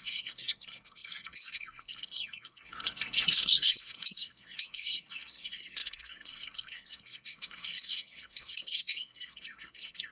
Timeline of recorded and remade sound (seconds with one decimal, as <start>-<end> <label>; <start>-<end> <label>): 0.0-10.1 remade